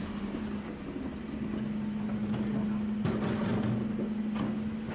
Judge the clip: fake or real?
real